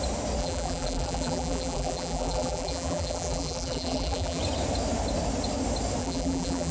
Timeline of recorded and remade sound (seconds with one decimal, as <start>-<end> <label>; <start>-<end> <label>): 0.0-0.4 recorded; 0.4-4.4 remade; 4.4-6.0 recorded; 6.0-6.7 remade